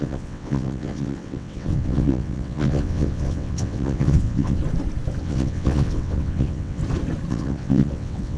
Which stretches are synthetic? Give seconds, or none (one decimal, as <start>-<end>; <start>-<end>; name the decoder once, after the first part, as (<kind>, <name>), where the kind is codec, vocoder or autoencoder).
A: 0.0-4.6 (vocoder, WaveNeXt); 5.2-6.8; 7.3-8.4